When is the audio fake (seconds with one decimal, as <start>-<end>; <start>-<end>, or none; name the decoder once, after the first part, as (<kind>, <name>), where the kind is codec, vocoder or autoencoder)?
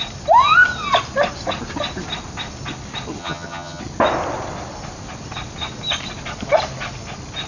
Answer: 3.2-3.8 (vocoder, HiFi-GAN)